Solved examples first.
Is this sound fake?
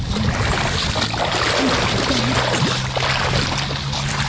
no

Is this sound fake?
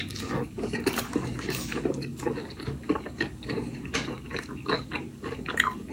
yes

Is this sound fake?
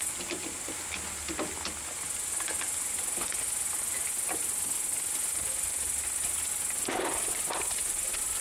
no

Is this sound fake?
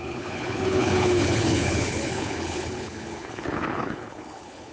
yes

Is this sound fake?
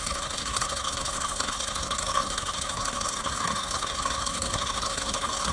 yes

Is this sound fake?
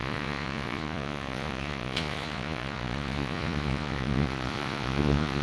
yes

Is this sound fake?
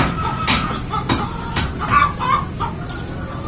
no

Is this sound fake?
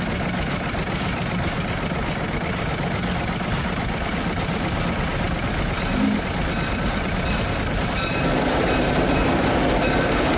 no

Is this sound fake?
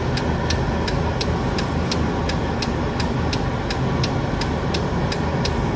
no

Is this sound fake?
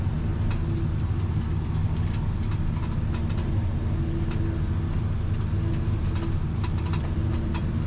no